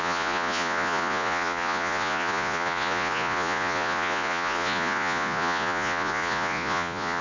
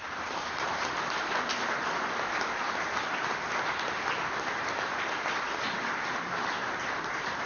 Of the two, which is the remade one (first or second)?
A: first